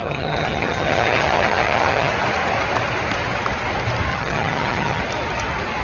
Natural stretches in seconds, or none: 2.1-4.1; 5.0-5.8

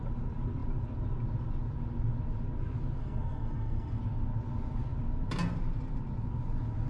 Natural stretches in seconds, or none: 0.0-3.0; 4.0-6.9

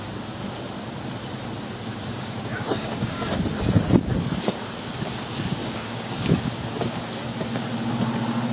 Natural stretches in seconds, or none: 0.0-1.9; 3.3-5.6; 6.5-8.5

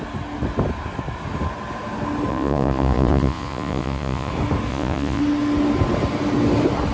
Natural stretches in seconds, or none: 0.0-2.3; 4.3-4.7; 5.2-6.9